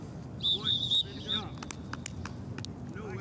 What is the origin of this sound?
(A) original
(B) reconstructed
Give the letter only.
A